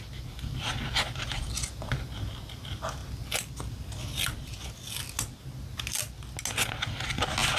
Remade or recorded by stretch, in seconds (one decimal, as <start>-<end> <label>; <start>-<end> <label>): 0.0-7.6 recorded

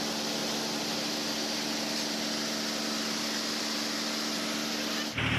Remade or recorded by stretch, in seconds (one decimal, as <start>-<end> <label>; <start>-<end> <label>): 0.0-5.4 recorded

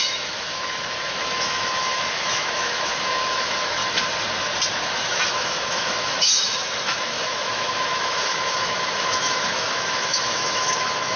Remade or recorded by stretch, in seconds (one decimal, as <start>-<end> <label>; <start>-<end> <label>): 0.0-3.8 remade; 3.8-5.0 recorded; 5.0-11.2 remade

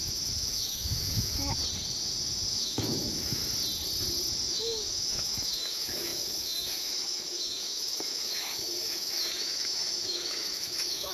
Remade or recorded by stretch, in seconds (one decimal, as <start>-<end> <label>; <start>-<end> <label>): 0.0-1.6 remade; 1.6-2.5 recorded; 2.5-3.4 remade; 3.4-4.5 recorded; 4.5-11.1 remade